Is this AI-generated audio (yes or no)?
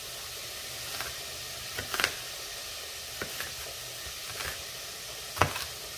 no